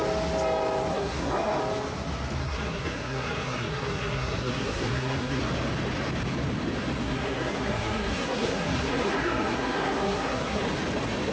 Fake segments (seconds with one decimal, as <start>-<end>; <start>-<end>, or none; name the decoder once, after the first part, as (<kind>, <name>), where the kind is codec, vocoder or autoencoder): 0.9-1.6 (codec, SNAC); 2.4-5.4; 7.0-10.6

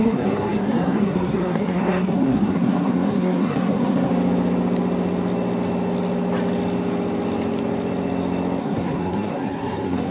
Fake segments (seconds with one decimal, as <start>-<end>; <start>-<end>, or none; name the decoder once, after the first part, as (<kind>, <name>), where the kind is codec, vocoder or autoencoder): 0.0-4.1 (codec, SNAC); 8.6-10.1

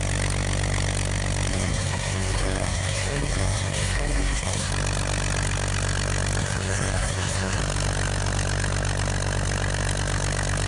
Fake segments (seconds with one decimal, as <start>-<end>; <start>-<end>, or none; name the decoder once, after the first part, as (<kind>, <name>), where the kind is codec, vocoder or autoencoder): 1.5-4.7 (codec, SNAC); 6.4-7.6

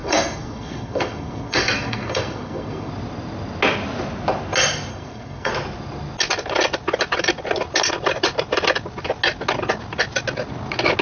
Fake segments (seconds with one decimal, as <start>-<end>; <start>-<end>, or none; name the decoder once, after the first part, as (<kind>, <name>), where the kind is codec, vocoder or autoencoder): 0.0-2.9 (codec, SNAC); 4.9-5.5

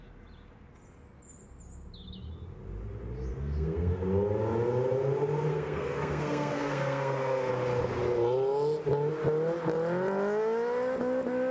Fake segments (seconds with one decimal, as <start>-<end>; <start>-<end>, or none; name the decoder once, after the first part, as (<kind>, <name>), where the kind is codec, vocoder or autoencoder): 3.3-4.0 (codec, SNAC); 5.5-7.5

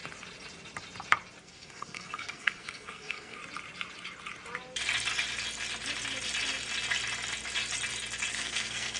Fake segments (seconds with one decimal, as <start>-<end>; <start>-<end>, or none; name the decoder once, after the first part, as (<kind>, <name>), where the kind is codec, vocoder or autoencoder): 1.4-3.4 (codec, SNAC); 8.3-9.0

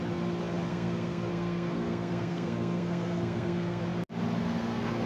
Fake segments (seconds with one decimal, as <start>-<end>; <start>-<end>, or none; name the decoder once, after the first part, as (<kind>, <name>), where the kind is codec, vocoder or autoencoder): 0.7-3.8 (codec, SNAC); 4.4-5.1